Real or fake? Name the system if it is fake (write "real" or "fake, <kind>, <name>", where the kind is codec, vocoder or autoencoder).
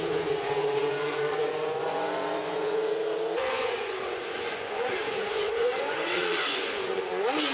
fake, vocoder, Vocos